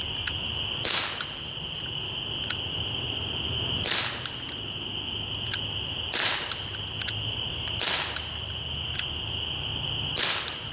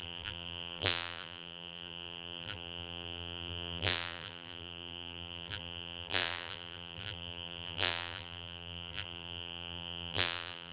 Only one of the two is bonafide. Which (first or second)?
first